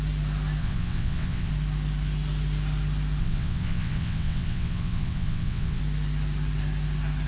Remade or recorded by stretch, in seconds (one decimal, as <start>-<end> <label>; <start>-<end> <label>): 0.0-0.6 recorded; 0.6-1.5 remade; 1.5-3.2 recorded; 3.2-5.8 remade; 5.8-7.3 recorded